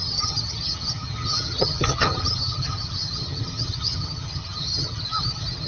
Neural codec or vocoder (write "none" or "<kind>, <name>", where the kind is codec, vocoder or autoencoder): vocoder, HiFi-GAN